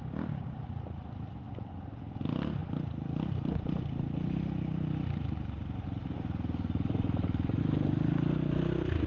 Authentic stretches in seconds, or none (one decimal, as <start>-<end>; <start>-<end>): 0.0-9.1